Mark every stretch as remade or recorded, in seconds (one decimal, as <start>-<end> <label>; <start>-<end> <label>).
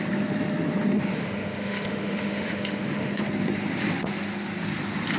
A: 0.0-1.1 recorded; 1.1-3.2 remade; 3.2-5.2 recorded